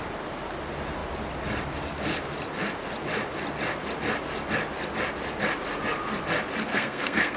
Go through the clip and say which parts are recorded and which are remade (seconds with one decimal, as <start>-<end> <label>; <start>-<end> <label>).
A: 0.0-6.7 recorded; 6.7-7.4 remade